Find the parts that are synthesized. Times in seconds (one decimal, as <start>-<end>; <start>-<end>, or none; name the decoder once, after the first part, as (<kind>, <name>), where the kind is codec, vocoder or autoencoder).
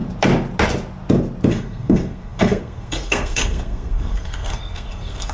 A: 1.5-5.3 (codec, SNAC)